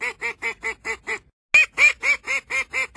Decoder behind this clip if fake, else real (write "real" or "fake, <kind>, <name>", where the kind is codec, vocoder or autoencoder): real